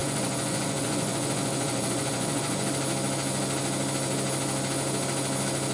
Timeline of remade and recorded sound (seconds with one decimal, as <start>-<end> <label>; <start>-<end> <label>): 0.0-2.7 remade; 2.7-5.7 recorded